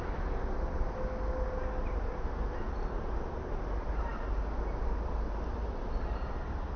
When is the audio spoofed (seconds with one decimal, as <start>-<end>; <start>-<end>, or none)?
none